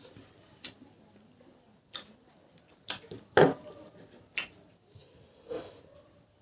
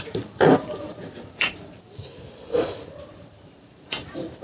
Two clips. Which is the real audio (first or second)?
first